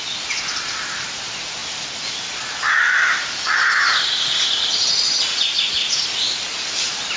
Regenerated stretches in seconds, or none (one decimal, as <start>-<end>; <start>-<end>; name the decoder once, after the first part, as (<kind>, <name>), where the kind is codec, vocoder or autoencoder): none